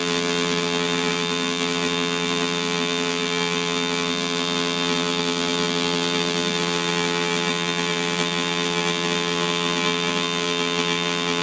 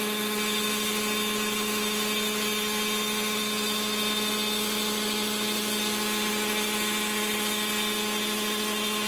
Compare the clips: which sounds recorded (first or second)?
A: second